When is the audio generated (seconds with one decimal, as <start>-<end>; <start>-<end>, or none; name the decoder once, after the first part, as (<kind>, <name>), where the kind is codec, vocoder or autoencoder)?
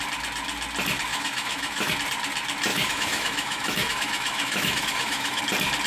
1.1-1.9 (autoencoder, DAC-VAE); 2.7-5.4